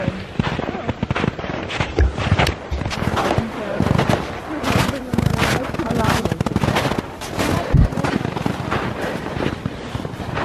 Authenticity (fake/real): real